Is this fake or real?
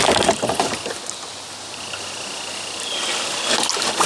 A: real